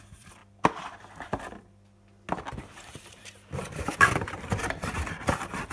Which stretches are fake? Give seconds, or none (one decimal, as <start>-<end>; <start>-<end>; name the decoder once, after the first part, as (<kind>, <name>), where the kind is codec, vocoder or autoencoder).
0.0-0.4 (vocoder, BigVGAN v2); 3.6-5.7